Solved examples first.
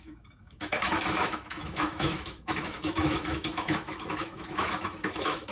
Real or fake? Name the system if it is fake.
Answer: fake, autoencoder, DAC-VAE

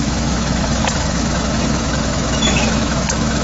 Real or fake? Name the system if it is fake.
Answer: fake, autoencoder, DAC-VAE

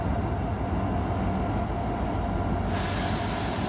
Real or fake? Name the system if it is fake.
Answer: real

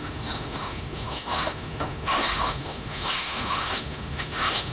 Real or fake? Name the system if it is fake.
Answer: fake, autoencoder, DAC-VAE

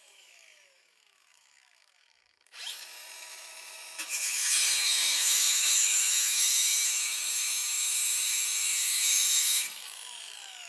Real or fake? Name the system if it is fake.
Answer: fake, autoencoder, DAC-VAE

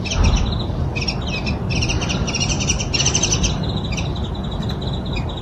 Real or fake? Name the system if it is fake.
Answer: real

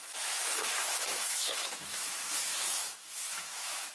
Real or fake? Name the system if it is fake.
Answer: fake, autoencoder, DAC-VAE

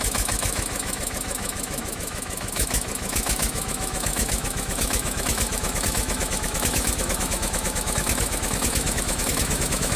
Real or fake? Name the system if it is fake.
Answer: fake, autoencoder, DAC-VAE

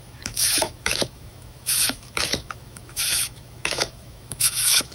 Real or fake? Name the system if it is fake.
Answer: fake, autoencoder, DAC-VAE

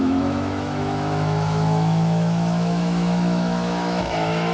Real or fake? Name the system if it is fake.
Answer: fake, autoencoder, DAC-VAE